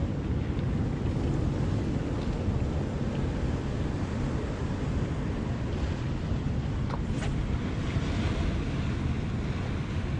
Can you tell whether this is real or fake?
real